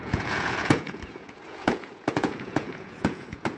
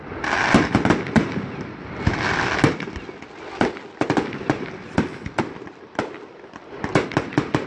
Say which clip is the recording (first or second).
second